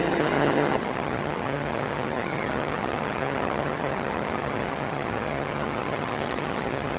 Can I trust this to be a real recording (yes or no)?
no